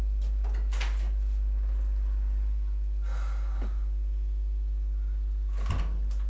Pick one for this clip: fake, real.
real